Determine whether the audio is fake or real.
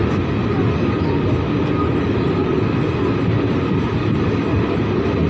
real